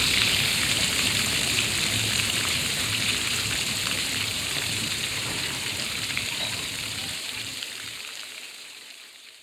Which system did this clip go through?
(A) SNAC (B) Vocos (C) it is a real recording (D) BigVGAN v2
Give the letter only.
D